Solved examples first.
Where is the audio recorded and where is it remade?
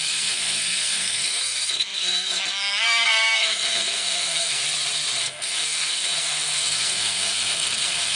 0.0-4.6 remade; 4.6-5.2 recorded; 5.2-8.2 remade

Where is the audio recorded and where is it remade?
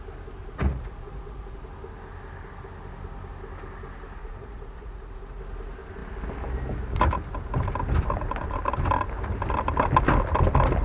0.0-0.4 recorded; 0.4-1.6 remade; 1.6-4.2 recorded; 4.2-5.4 remade; 5.4-10.8 recorded